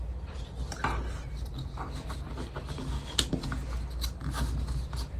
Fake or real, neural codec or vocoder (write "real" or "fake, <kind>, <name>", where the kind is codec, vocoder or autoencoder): real